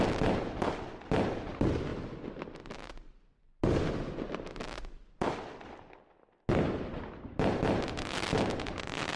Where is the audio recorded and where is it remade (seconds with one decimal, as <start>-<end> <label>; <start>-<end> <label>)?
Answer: 0.0-9.2 recorded